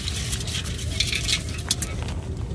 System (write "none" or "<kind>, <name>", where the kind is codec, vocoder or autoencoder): none